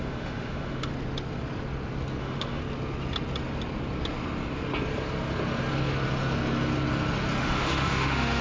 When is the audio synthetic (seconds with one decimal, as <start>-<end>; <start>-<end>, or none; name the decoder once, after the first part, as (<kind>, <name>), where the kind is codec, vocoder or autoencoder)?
0.0-0.9 (autoencoder, DAC-VAE); 2.2-2.6; 7.4-8.4